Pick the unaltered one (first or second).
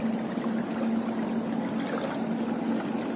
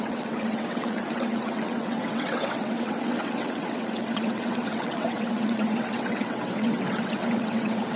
first